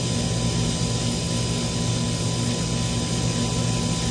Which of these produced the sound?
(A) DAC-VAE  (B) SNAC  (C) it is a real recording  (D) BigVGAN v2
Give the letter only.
C